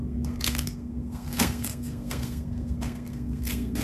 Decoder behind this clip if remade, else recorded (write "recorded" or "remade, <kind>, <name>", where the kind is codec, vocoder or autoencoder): remade, codec, SNAC